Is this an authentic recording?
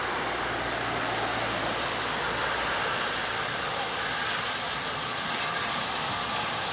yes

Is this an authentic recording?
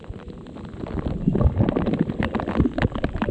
yes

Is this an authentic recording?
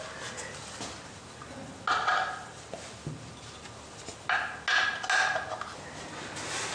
yes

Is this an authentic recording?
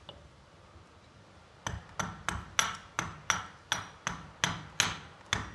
yes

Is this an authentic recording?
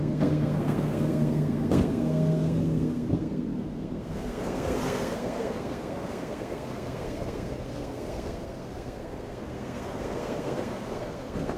no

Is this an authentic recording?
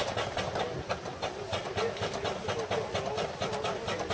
yes